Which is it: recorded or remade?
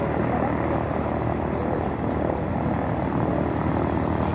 recorded